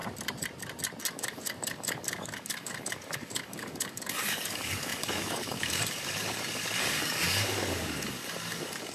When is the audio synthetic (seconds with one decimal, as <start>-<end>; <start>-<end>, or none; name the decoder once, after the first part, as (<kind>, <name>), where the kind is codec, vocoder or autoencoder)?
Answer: 1.1-8.9 (codec, DAC)